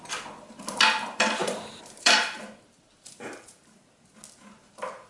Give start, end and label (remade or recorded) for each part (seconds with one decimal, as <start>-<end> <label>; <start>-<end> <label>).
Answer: 0.0-1.4 recorded; 1.4-3.6 remade; 3.6-5.1 recorded